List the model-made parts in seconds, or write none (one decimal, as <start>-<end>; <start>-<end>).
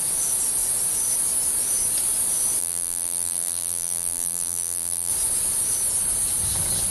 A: 2.6-5.1